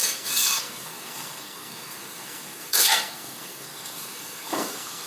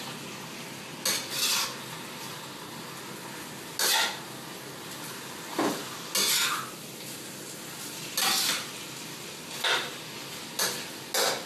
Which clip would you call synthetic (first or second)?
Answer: first